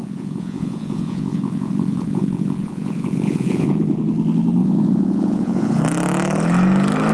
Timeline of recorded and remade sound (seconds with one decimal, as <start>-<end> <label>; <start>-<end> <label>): 0.0-4.0 remade; 4.0-4.6 recorded; 4.6-5.8 remade; 5.8-7.1 recorded

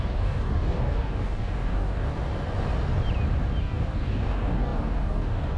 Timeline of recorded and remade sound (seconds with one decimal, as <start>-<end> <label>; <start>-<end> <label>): 0.0-2.1 remade; 2.1-3.6 recorded; 3.6-5.6 remade